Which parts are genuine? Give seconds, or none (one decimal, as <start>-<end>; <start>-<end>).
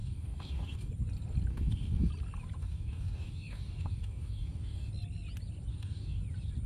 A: 0.9-1.5; 2.1-2.6; 4.9-5.7; 6.2-6.7